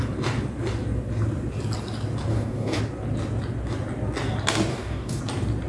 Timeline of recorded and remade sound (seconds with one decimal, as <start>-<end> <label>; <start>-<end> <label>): 0.0-2.3 recorded; 2.3-2.8 remade; 2.8-4.7 recorded; 4.7-5.2 remade; 5.2-5.7 recorded